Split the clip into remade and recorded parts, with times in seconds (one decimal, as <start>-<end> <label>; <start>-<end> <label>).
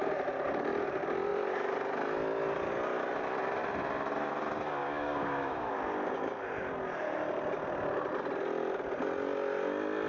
0.0-4.8 recorded; 4.8-5.7 remade; 5.7-10.1 recorded